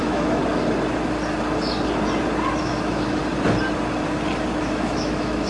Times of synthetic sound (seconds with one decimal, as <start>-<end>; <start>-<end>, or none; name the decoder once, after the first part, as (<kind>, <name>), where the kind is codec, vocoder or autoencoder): 0.0-0.4 (autoencoder, DAC-VAE); 2.6-3.2; 4.6-5.5